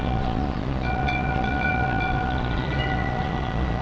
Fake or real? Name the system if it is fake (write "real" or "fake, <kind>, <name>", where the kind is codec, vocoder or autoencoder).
fake, vocoder, Vocos